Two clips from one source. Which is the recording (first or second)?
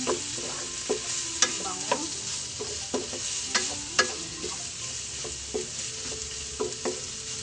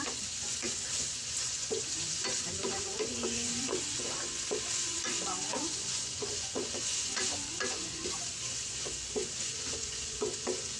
first